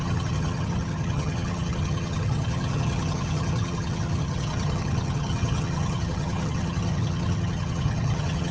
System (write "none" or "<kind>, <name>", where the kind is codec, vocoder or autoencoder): vocoder, HiFi-GAN